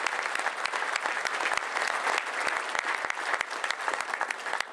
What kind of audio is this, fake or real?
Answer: real